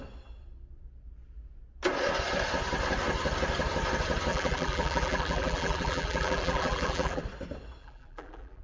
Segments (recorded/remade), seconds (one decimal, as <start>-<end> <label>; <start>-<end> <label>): 0.0-4.3 recorded; 4.3-7.2 remade; 7.2-7.8 recorded; 7.8-8.6 remade